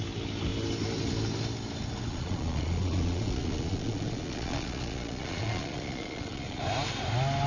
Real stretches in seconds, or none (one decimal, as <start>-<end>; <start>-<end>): 0.0-2.1; 6.6-7.5